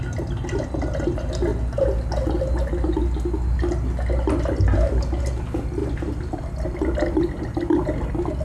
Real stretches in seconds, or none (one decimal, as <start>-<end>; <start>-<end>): 0.0-5.8; 6.4-8.4